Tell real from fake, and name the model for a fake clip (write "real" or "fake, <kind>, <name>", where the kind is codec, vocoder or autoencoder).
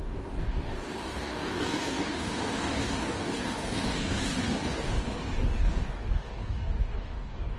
fake, codec, DAC